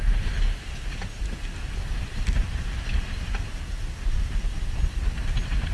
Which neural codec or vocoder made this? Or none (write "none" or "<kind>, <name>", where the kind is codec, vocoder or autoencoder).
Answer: none